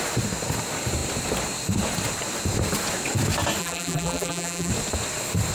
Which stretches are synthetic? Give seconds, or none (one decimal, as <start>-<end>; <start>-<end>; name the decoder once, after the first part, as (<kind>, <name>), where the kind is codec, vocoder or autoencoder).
3.6-4.7 (vocoder, BigVGAN v2)